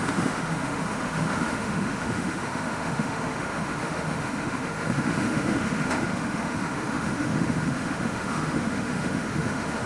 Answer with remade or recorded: remade